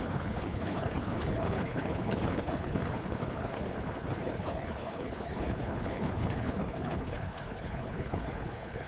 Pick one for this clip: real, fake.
fake